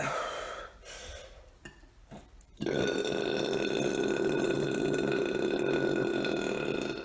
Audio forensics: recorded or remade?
remade